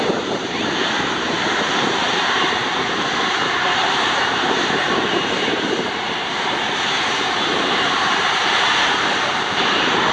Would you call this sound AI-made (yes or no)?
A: yes